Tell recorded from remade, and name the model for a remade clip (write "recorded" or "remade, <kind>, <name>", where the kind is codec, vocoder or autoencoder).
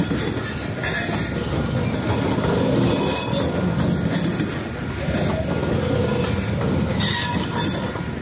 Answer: recorded